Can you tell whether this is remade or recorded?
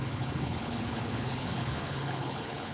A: remade